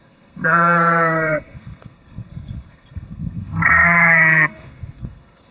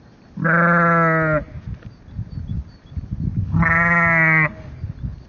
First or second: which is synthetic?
first